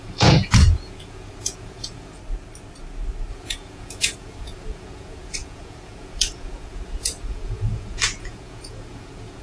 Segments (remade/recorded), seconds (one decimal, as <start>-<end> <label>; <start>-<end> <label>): 0.0-2.2 remade; 2.2-3.3 recorded; 3.3-9.4 remade